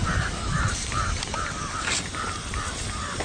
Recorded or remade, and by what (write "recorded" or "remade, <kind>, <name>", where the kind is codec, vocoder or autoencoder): remade, vocoder, BigVGAN v2